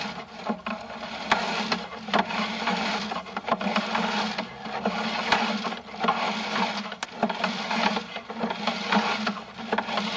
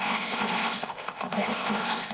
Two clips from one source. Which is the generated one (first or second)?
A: second